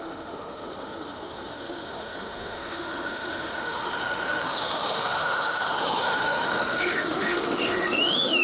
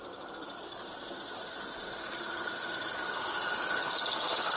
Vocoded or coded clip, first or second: first